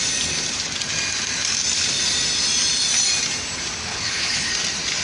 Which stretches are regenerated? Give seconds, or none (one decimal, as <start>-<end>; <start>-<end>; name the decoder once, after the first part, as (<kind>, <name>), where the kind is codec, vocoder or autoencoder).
3.9-4.5 (codec, HILCodec)

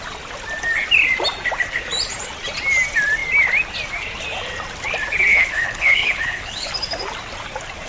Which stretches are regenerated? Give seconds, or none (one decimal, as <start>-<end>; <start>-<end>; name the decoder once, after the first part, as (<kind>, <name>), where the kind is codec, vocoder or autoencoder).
5.3-6.7 (codec, HILCodec)

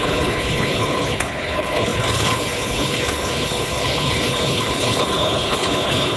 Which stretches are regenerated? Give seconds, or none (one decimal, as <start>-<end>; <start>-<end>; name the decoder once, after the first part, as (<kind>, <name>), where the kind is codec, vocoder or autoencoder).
0.0-6.2 (codec, HILCodec)